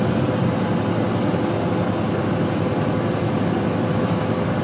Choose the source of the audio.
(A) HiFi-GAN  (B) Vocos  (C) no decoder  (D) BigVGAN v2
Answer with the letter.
C